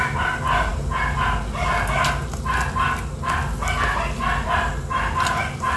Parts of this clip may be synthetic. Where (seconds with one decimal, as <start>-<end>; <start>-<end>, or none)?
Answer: none